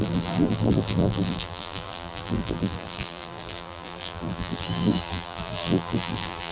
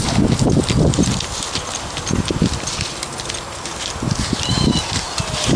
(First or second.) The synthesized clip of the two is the first